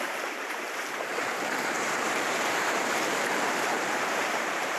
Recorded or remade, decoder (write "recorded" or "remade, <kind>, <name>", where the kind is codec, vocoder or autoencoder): remade, vocoder, BigVGAN v2